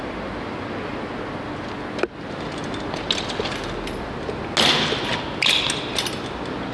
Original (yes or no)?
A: yes